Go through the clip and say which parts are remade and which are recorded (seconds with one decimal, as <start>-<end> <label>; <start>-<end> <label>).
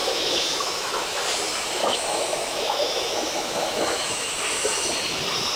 0.0-1.2 remade; 1.2-1.8 recorded; 1.8-4.4 remade; 4.4-5.6 recorded